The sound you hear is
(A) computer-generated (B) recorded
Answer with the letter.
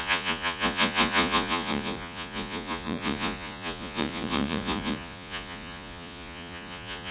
A